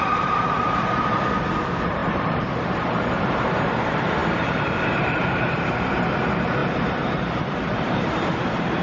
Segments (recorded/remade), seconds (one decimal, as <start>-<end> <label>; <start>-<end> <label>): 0.0-8.8 remade